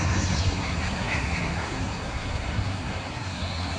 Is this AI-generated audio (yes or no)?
yes